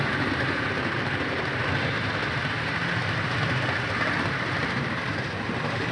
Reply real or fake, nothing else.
real